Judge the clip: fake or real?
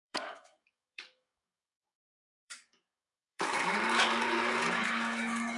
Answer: fake